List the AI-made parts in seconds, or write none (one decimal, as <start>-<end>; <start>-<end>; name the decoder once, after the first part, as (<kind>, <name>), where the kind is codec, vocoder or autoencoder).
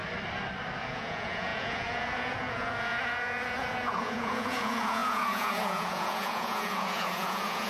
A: 0.8-7.7 (vocoder, Vocos)